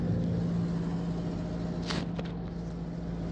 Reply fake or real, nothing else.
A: real